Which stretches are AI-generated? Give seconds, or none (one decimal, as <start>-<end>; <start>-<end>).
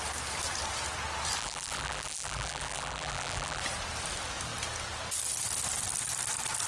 1.4-3.6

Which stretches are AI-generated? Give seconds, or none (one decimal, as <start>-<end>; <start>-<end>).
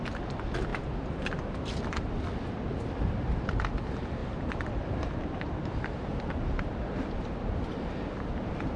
0.7-1.8; 4.2-8.8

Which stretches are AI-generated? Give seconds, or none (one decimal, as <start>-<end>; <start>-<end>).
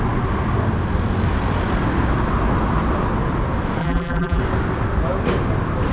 3.8-4.4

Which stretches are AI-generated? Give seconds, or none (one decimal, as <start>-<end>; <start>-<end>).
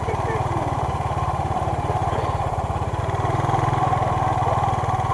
0.0-5.1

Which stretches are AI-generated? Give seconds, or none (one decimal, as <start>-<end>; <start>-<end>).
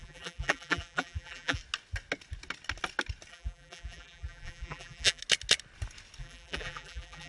0.0-1.6; 3.3-5.2; 6.2-7.3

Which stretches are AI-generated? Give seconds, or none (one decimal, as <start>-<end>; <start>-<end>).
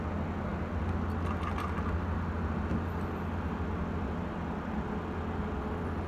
none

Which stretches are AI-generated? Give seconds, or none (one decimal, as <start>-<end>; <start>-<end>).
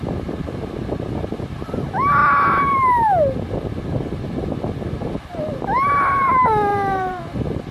6.7-7.2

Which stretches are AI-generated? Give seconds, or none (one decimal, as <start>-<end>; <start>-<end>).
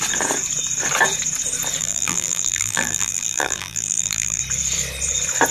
1.8-4.4